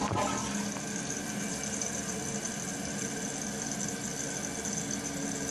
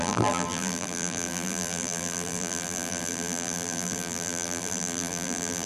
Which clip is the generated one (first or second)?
second